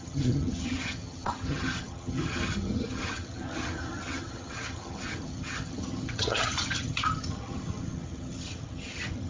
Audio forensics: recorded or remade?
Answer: remade